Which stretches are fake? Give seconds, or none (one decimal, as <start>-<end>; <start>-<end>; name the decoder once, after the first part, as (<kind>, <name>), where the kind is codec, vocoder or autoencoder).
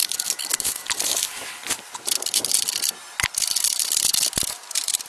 none